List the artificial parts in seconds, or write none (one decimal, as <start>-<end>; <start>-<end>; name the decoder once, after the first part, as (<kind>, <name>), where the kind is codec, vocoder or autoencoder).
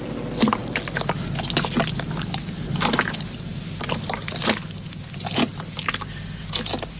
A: none